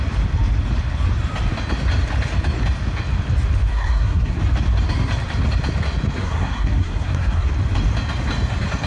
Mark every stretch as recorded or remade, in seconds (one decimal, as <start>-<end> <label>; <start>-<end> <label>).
0.0-3.7 recorded; 3.7-4.4 remade; 4.4-6.2 recorded; 6.2-7.5 remade; 7.5-8.9 recorded